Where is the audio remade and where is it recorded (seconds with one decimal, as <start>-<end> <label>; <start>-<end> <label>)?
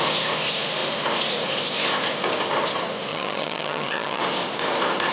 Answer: 0.0-3.1 recorded; 3.1-4.2 remade; 4.2-5.1 recorded